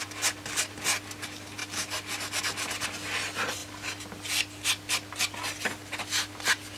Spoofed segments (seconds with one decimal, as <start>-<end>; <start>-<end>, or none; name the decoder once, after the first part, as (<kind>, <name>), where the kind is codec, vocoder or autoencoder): none